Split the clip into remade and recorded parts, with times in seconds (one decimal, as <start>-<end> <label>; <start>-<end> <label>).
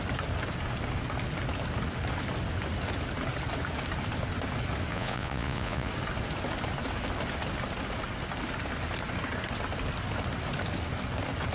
0.0-4.9 recorded; 4.9-5.9 remade; 5.9-11.5 recorded